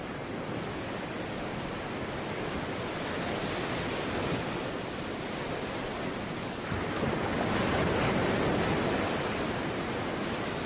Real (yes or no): yes